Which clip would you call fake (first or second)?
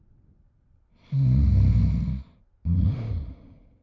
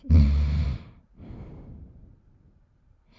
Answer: second